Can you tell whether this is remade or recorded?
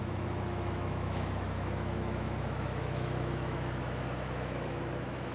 remade